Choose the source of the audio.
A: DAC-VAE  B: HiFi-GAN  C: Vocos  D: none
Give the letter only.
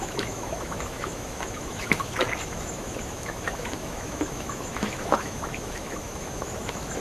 A